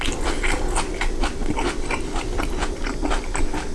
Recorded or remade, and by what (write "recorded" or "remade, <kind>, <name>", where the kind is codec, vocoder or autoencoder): recorded